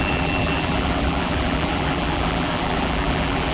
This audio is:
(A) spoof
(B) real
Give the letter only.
A